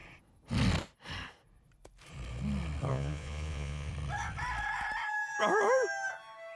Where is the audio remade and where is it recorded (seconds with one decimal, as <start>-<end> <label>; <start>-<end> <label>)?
0.0-2.9 recorded; 2.9-3.9 remade; 3.9-6.6 recorded